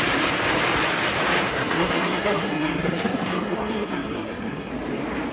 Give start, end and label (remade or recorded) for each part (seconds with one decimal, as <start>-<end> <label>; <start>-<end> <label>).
0.0-1.5 recorded; 1.5-4.7 remade; 4.7-5.3 recorded